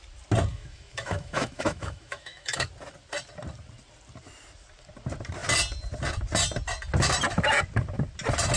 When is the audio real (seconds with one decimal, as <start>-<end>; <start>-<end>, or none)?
0.0-0.5; 2.7-8.6